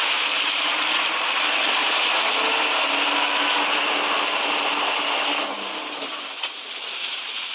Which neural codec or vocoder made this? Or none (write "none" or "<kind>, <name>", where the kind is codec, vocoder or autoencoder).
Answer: none